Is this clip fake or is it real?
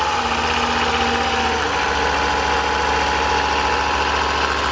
real